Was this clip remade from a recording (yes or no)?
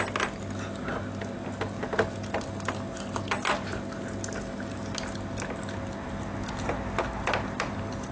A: no